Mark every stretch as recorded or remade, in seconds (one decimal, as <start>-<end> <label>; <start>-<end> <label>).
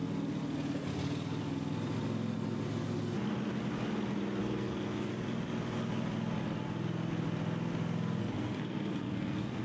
0.0-4.4 recorded; 4.4-5.1 remade; 5.1-8.2 recorded; 8.2-9.6 remade